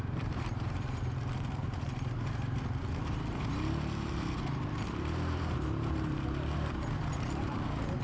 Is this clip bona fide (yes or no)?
no